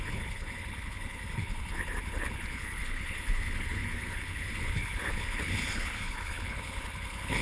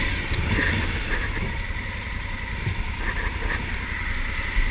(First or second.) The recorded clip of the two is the second